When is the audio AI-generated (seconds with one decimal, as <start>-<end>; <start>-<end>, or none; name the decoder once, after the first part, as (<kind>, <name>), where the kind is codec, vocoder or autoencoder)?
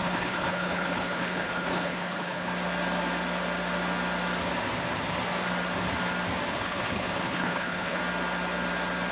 0.0-2.5 (codec, HILCodec); 6.5-8.0